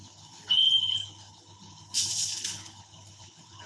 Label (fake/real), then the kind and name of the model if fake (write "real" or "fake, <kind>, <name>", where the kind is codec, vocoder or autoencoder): fake, codec, HILCodec